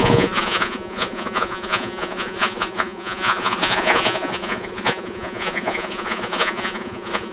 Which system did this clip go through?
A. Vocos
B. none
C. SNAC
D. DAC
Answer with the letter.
A